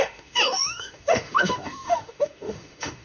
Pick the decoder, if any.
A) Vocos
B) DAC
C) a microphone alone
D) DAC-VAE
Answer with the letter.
D